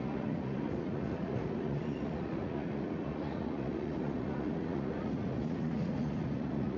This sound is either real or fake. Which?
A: fake